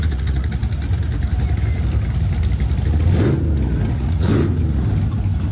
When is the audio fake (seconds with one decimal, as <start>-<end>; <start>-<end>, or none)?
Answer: 0.0-0.6; 3.9-4.3